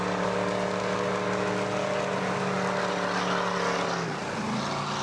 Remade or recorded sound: recorded